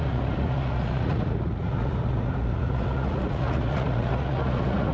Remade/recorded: remade